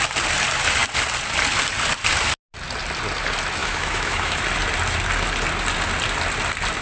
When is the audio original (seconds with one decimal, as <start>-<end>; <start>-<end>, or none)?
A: 0.0-3.6; 4.4-6.8